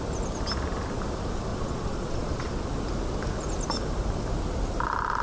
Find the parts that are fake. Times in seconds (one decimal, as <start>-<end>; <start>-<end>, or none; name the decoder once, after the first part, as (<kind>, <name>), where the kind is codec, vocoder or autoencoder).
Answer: 1.5-2.5 (vocoder, Vocos)